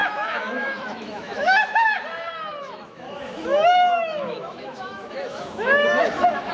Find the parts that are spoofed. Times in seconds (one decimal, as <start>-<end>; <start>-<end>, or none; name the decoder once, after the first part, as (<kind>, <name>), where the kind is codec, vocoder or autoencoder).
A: 0.0-2.0 (autoencoder, DAC-VAE); 2.6-6.5